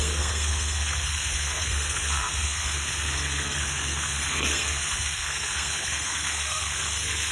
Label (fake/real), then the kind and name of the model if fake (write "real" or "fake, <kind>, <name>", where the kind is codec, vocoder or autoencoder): fake, codec, SNAC